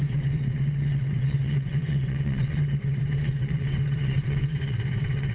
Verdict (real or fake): fake